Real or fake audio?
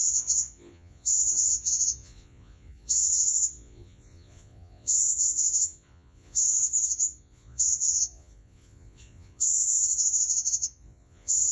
fake